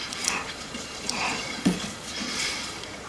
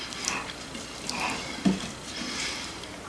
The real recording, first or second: second